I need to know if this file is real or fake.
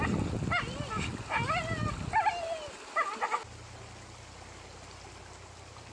real